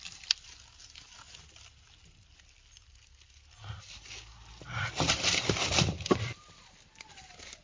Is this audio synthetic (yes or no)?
no